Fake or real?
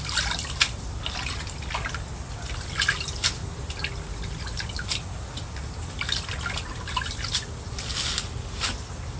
real